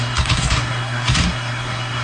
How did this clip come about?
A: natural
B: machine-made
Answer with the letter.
B